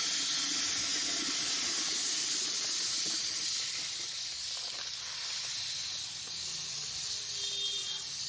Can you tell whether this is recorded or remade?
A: recorded